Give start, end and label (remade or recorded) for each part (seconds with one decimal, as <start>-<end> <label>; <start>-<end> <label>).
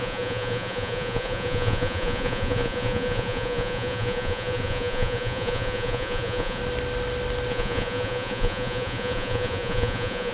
0.0-6.6 remade; 6.6-7.5 recorded; 7.5-10.3 remade